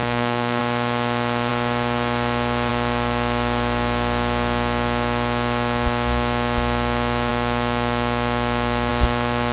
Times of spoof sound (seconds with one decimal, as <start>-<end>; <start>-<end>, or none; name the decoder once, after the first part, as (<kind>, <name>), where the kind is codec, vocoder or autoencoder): 0.0-0.6 (codec, SNAC)